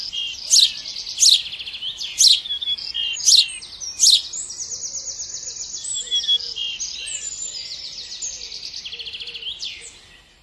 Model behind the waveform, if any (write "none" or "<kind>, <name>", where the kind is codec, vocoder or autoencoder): none